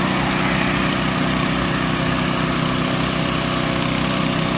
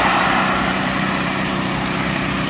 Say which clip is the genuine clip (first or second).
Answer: first